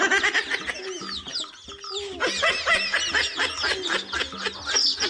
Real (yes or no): yes